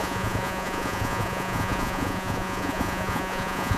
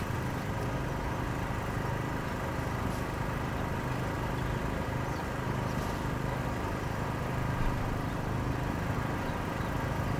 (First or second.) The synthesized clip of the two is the first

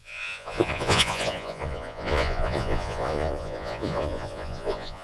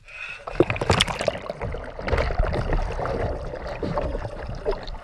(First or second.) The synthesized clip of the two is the first